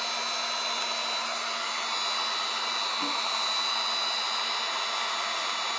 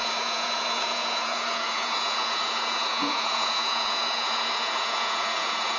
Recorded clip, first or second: first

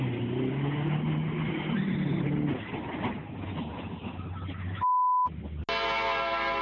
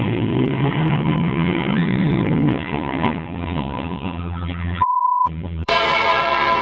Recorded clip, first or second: first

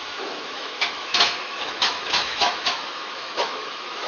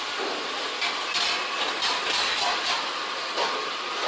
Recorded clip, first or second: second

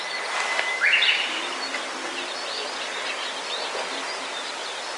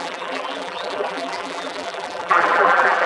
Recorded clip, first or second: first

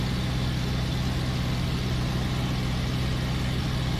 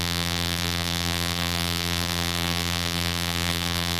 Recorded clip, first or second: first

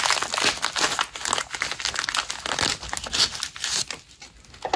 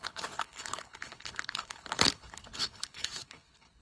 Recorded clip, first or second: first